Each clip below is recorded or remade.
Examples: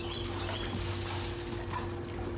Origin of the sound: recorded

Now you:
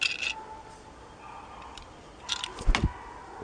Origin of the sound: recorded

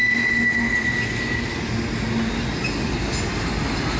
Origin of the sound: recorded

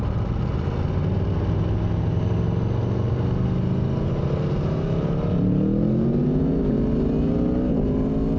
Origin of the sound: recorded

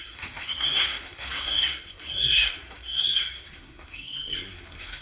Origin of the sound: remade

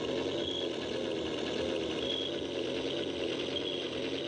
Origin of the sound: recorded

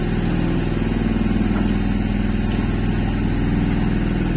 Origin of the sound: recorded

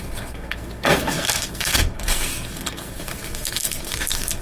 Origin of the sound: remade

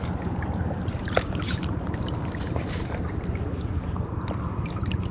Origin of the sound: remade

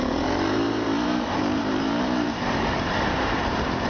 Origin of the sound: remade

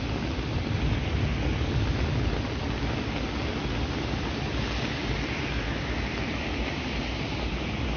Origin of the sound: recorded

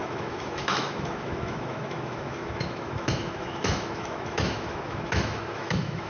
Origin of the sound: remade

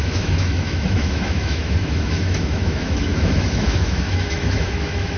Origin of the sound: remade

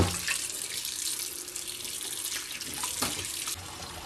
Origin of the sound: recorded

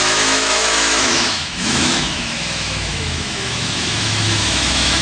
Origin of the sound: remade